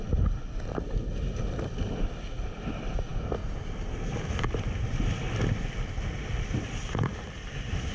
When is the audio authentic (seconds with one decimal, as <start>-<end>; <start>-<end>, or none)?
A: 0.0-7.9